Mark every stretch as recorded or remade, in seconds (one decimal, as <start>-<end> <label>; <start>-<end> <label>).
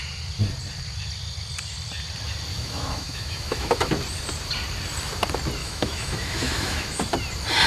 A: 0.0-2.5 recorded; 2.5-3.9 remade; 3.9-5.6 recorded; 5.6-7.0 remade; 7.0-7.7 recorded